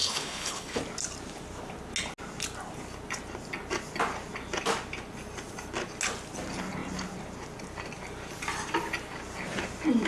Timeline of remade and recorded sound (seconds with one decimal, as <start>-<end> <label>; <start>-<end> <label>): 0.0-0.8 remade; 0.8-10.1 recorded